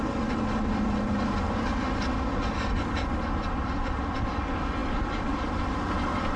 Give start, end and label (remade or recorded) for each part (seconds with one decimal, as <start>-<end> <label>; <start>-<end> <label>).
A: 0.0-6.4 recorded